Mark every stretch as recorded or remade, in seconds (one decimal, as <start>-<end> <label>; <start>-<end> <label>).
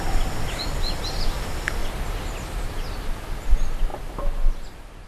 0.0-5.1 recorded